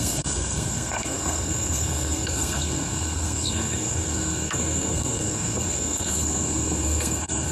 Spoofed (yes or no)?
yes